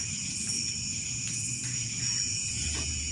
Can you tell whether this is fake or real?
fake